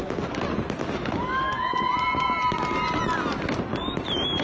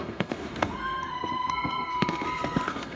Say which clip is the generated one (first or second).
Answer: second